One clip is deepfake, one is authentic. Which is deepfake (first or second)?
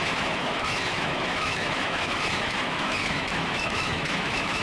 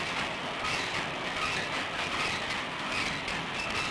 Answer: first